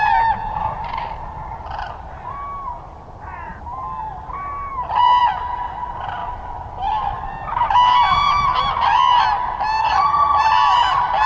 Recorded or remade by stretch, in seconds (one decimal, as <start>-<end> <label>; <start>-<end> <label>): 0.0-9.8 recorded; 9.8-10.4 remade; 10.4-11.3 recorded